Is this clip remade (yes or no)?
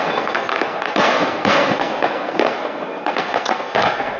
yes